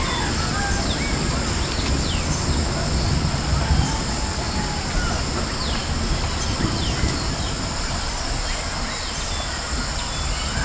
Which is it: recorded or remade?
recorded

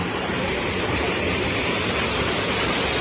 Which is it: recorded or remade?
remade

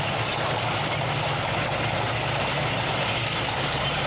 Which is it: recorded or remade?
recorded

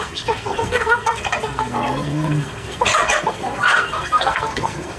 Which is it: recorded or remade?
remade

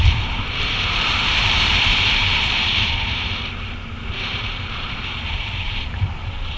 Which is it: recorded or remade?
remade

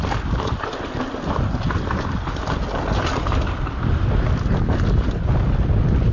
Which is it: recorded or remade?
recorded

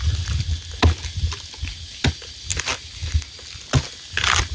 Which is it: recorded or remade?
recorded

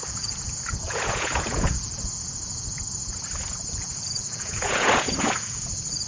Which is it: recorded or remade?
remade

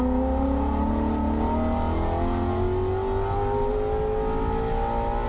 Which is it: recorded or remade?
recorded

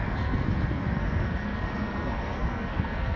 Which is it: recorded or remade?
remade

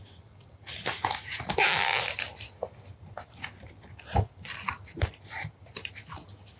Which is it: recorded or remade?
recorded